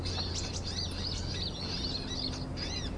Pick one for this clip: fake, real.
real